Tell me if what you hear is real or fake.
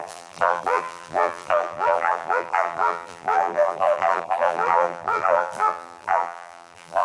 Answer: fake